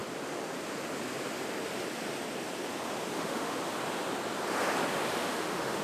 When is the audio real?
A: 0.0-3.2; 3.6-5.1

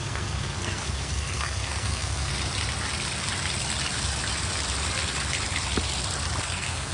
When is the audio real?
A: 2.3-6.4

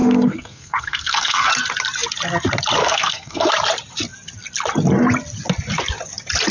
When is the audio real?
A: 1.5-2.8; 3.5-6.5

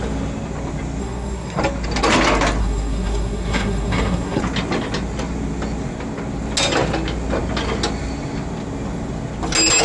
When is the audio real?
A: 0.0-1.0; 1.6-2.6; 4.4-9.8

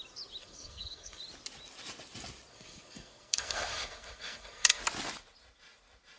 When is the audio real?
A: 0.0-0.4; 1.2-2.5; 4.8-6.2

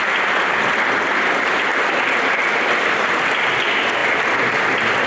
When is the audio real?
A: 0.0-1.7; 3.6-4.0

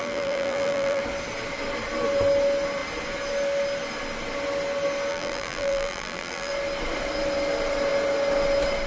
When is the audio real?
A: 1.0-5.1; 6.5-8.9

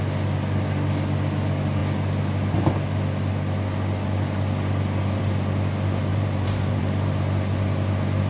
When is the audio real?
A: 0.0-6.1; 6.8-8.3